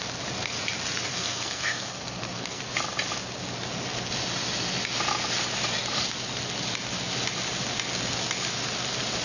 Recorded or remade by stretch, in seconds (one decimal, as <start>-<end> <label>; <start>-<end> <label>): 0.0-1.1 recorded; 1.1-2.6 remade; 2.6-9.2 recorded

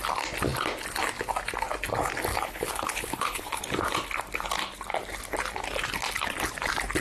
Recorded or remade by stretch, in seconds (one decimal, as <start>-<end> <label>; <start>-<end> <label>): 0.0-2.3 recorded; 2.3-3.6 remade; 3.6-7.0 recorded

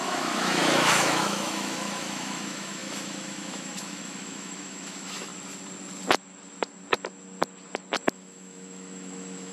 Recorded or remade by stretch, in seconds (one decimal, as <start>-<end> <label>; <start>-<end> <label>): 0.0-5.3 remade; 5.3-8.1 recorded; 8.1-9.5 remade

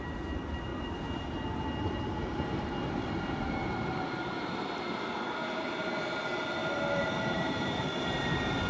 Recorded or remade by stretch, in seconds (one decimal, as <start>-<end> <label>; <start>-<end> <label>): 0.0-6.6 recorded; 6.6-8.7 remade

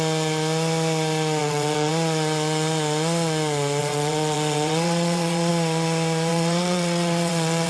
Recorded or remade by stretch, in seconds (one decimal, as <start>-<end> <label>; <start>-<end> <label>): 0.0-1.4 recorded; 1.4-1.9 remade; 1.9-3.8 recorded; 3.8-5.5 remade; 5.5-6.3 recorded; 6.3-7.7 remade

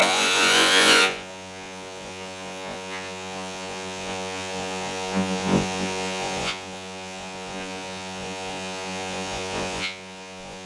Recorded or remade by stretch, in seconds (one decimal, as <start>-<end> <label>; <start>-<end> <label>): 0.0-10.7 remade

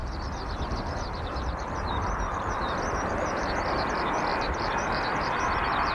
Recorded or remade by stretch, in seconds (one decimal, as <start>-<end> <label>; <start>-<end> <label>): 0.0-3.5 remade; 3.5-4.3 recorded; 4.3-5.0 remade; 5.0-5.9 recorded

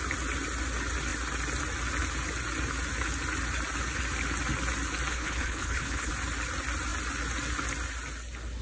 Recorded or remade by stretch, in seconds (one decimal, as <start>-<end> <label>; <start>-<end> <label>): 0.0-5.1 recorded; 5.1-6.1 remade; 6.1-8.6 recorded